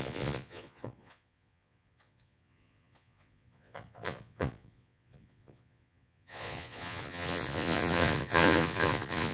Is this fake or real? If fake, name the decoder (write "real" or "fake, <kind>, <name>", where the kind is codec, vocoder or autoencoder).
fake, vocoder, Vocos